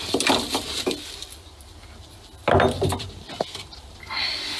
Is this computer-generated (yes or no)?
no